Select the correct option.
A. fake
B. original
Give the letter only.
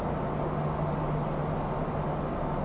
B